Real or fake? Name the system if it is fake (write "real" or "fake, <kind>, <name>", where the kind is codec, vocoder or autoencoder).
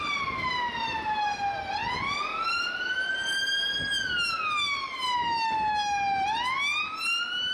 real